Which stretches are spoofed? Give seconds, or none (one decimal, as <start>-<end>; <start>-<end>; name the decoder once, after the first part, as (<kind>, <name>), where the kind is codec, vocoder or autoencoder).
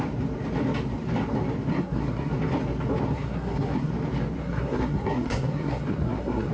1.7-2.3 (codec, SNAC); 3.1-3.9; 4.4-6.5